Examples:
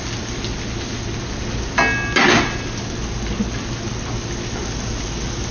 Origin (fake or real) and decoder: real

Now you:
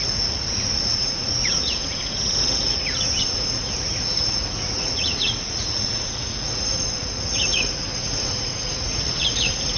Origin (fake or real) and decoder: fake, vocoder, Vocos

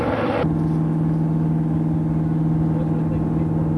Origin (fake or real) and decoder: real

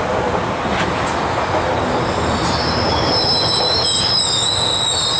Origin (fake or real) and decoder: real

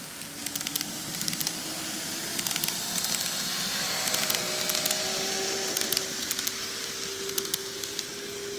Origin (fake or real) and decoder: real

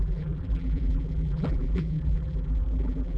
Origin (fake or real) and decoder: fake, vocoder, BigVGAN v2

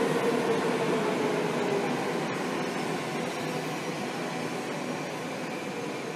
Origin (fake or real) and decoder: real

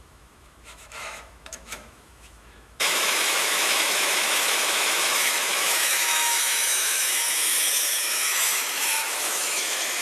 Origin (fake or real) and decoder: fake, autoencoder, DAC-VAE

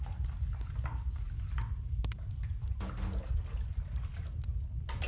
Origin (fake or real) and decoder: real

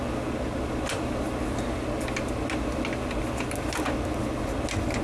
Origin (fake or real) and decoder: real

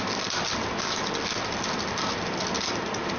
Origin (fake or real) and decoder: real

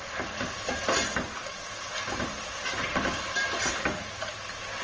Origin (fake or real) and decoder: real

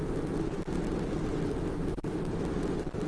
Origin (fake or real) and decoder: real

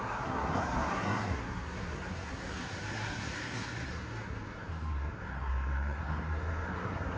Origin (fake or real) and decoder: fake, codec, SNAC